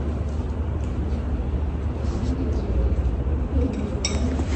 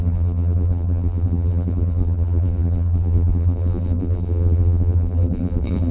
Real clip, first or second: first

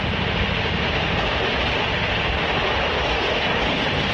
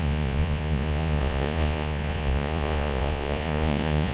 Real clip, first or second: first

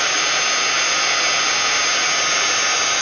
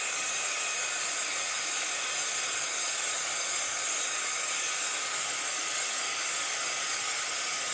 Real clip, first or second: first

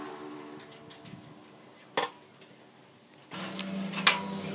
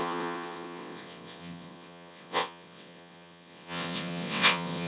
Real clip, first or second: first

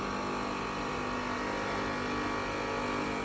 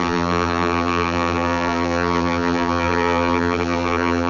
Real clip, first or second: first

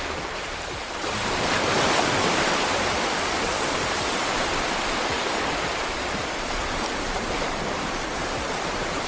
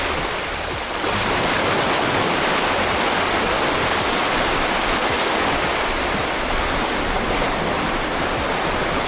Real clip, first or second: second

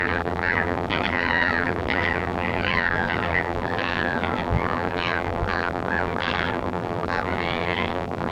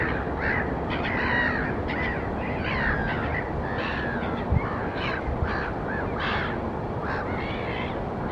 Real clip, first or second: second